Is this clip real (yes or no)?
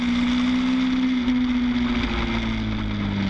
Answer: yes